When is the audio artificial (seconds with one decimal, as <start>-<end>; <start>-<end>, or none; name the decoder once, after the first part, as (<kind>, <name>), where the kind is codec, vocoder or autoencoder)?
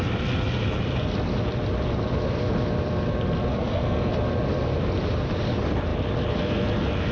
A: 3.5-4.1 (codec, SNAC)